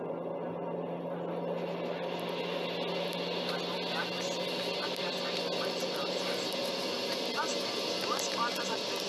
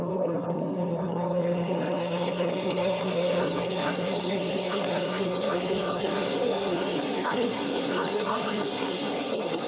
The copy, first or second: second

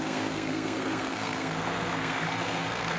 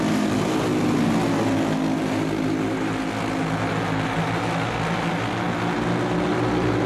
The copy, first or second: first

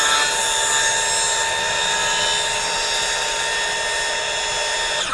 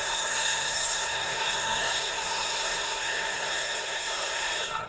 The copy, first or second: second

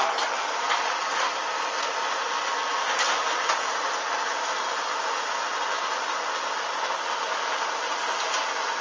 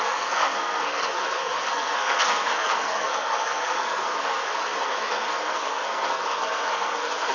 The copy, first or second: second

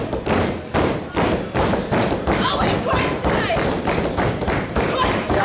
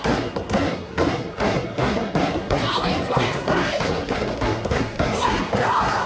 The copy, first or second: second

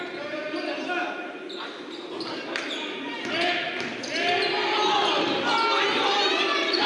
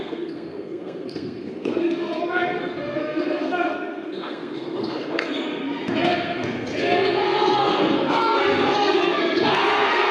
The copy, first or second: second